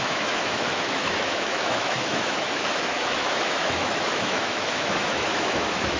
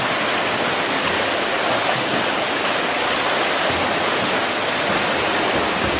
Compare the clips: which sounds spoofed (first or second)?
first